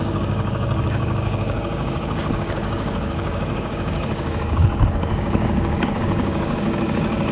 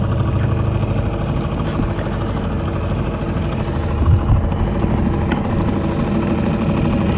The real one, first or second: second